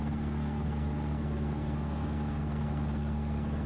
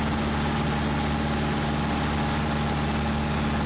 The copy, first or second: first